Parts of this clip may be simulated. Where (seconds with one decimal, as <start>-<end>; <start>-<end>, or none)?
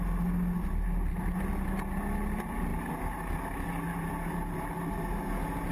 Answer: none